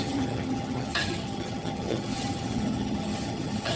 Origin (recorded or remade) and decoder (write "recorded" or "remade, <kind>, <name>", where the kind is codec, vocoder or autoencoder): remade, vocoder, HiFi-GAN